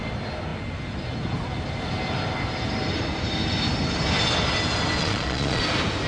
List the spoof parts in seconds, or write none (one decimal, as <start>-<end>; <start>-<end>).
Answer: 5.0-5.6